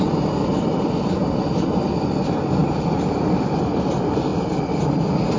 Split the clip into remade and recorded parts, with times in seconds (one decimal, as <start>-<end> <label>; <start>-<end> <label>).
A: 0.0-5.4 recorded